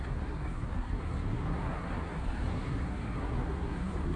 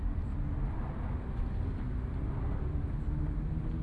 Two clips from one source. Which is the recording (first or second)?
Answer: second